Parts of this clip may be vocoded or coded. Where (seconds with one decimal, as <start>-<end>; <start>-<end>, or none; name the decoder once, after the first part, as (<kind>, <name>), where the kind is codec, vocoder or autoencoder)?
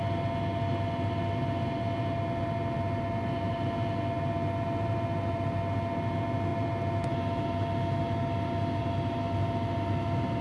none